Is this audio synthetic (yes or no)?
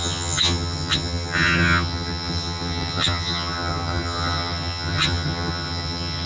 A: yes